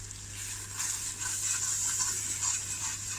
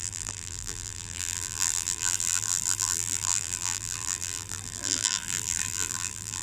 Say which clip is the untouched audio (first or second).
first